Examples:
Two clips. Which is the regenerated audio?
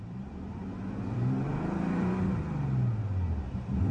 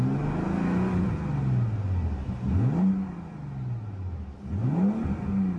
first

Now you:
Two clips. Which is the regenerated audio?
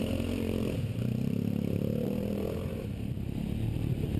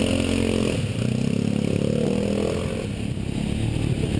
first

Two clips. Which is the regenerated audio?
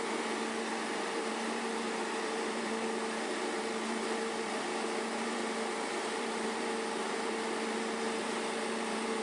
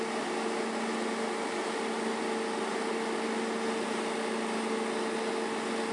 first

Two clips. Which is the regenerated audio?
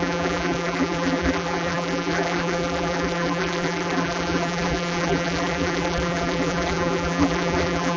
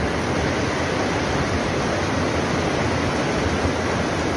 first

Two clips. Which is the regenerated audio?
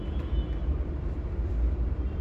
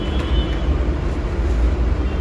first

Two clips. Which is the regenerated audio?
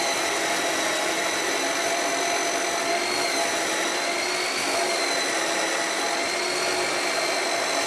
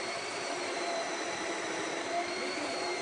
second